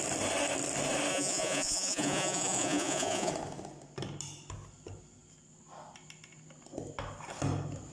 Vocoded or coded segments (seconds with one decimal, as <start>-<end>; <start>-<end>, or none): 1.1-3.3